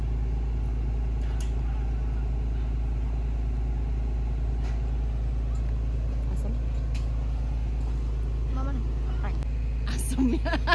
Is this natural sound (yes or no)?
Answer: yes